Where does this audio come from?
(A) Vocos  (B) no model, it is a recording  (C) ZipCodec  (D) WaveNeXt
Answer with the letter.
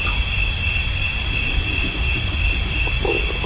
B